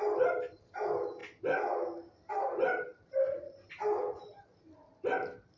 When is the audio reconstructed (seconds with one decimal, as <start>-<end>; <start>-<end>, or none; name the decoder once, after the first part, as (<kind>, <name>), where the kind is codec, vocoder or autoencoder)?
2.9-3.7 (vocoder, BigVGAN v2)